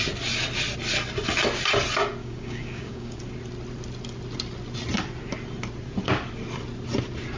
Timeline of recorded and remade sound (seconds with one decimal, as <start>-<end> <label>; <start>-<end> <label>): 0.0-2.2 recorded; 2.2-3.2 remade; 3.2-7.4 recorded